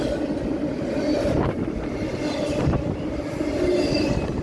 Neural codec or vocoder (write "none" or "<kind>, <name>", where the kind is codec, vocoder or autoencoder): none